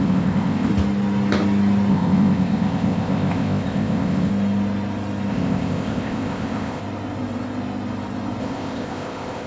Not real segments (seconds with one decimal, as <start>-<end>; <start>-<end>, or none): 0.0-0.7; 1.9-4.3; 5.3-6.8; 8.4-9.5